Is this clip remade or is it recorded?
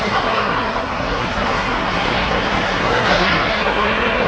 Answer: remade